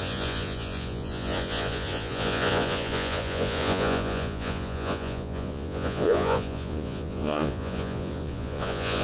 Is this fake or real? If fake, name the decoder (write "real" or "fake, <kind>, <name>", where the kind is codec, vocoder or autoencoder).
fake, vocoder, Vocos